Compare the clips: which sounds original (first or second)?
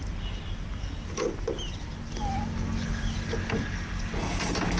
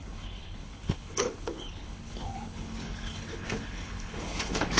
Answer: first